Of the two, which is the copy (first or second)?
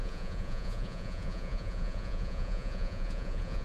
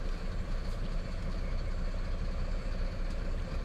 first